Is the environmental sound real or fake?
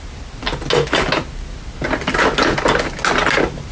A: real